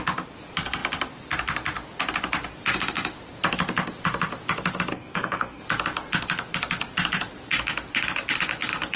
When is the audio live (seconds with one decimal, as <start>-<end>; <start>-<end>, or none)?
0.0-4.9; 5.6-9.0